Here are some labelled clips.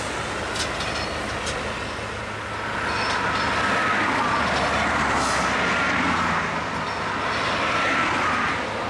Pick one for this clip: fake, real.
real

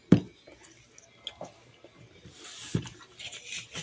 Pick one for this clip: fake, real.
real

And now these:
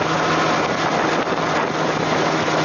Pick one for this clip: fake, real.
real